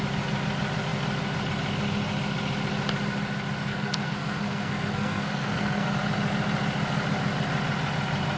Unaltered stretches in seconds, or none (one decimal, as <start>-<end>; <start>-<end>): 0.0-3.7; 5.9-8.4